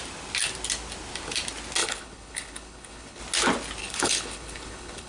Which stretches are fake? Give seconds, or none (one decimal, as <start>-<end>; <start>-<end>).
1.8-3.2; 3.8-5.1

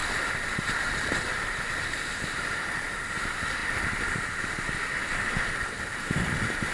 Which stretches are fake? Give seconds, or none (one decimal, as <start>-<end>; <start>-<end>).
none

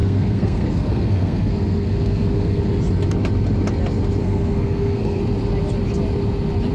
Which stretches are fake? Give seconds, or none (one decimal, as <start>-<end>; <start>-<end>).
0.0-2.6; 4.2-5.2